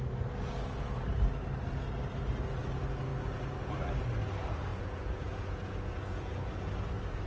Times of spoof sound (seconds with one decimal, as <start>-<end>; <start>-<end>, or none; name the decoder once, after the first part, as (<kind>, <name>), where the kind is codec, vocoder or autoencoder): 4.7-6.5 (vocoder, Vocos)